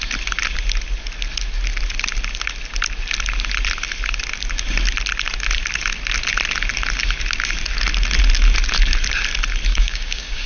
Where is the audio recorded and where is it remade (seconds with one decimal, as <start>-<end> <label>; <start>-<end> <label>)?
0.0-9.7 recorded; 9.7-10.5 remade